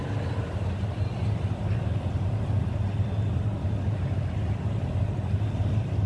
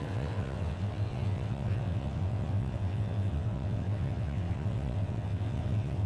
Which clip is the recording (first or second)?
first